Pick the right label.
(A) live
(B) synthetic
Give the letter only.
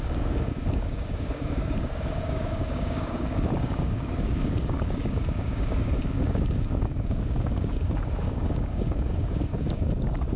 B